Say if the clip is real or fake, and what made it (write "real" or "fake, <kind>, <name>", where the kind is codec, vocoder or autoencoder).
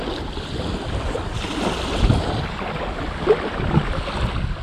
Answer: real